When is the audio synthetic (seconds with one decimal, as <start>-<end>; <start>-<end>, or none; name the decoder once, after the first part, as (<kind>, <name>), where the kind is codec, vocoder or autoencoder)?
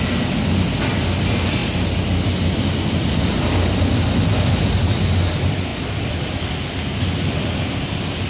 none